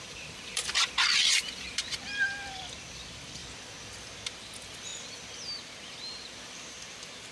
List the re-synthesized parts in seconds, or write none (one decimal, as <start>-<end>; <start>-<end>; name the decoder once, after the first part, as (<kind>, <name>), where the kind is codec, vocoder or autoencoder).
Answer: 0.0-3.4 (vocoder, BigVGAN v2); 4.3-4.9; 5.8-7.3